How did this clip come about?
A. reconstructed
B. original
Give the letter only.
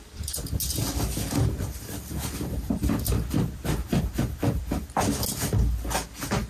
B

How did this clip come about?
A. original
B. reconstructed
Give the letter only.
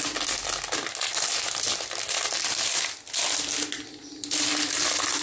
A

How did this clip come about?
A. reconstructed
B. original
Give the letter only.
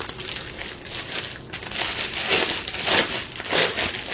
B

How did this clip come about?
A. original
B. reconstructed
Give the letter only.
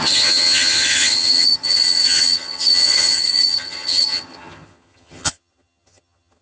B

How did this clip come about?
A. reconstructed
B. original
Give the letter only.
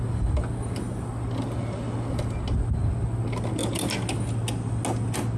B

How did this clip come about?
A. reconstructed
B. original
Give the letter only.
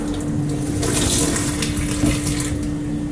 B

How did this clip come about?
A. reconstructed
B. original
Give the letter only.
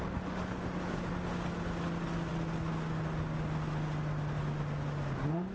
B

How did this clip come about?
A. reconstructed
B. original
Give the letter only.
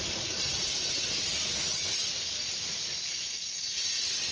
B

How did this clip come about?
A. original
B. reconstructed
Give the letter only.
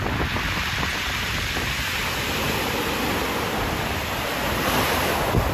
A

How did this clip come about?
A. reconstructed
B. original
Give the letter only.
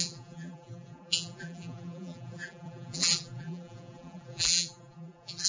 A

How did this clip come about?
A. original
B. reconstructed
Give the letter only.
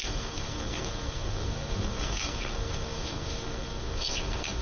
B